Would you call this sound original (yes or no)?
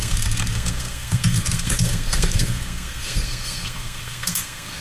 no